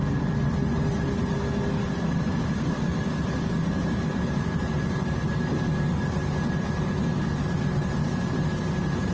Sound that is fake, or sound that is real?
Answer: real